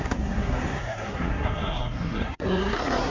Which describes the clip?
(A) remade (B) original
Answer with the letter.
A